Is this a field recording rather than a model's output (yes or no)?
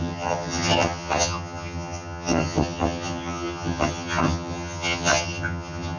no